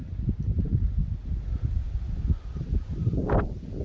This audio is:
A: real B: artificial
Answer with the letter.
A